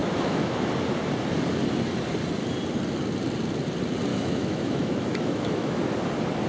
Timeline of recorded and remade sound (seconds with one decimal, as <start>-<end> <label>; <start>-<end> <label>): 0.0-0.6 remade; 0.6-4.1 recorded; 4.1-5.8 remade; 5.8-6.5 recorded